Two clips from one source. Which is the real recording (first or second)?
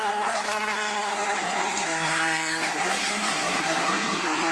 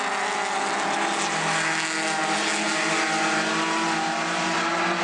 second